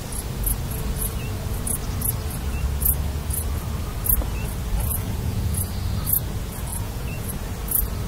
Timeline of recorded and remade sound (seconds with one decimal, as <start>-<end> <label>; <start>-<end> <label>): 0.0-4.9 recorded; 4.9-5.7 remade; 5.7-6.7 recorded; 6.7-7.3 remade; 7.3-8.1 recorded